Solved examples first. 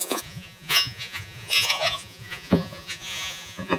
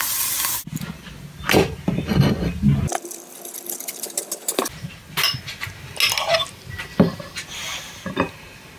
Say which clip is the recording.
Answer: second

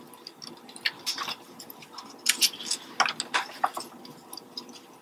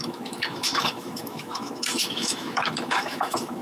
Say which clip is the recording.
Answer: first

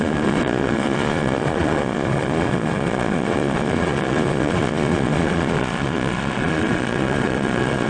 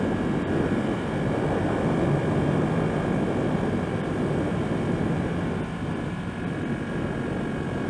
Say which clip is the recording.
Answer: second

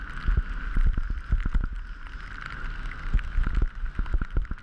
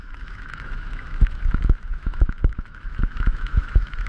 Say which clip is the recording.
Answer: first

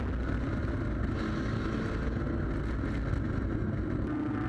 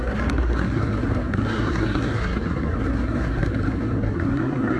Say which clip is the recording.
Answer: first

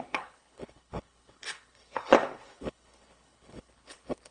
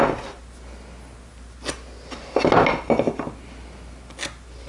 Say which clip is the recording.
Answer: second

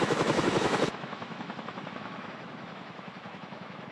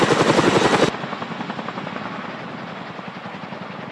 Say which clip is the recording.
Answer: second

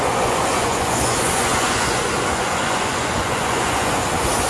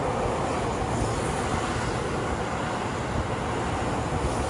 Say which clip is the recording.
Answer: second